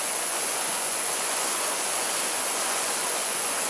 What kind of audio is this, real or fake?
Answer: fake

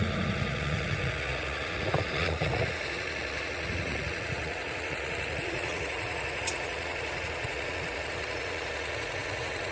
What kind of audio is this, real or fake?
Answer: fake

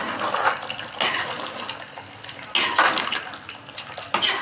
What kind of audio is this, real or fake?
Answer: real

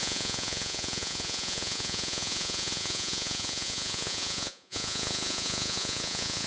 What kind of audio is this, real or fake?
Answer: fake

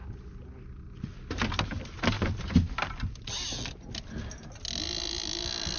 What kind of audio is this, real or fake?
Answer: real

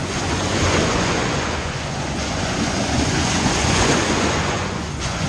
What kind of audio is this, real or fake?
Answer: fake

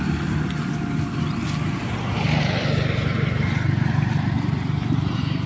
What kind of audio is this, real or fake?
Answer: real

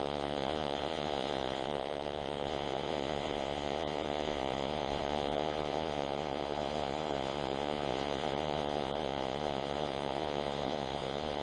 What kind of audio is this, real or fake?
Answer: fake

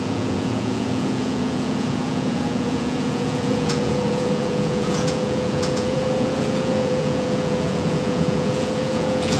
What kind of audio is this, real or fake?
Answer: fake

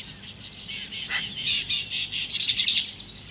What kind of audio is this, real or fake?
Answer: real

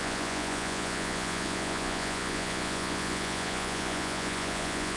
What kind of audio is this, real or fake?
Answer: fake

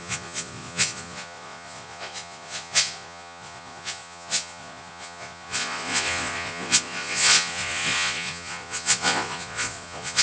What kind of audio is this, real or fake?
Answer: fake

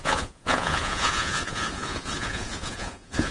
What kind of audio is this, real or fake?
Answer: fake